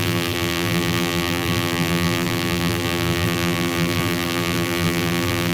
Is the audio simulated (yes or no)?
yes